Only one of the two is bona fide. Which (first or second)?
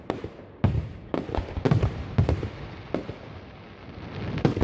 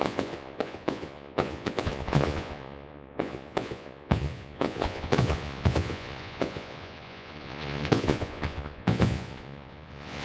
first